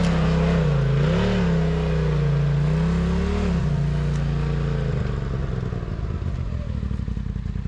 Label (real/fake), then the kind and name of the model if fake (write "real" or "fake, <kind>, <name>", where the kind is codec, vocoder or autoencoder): real